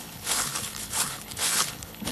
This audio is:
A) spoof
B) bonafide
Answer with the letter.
A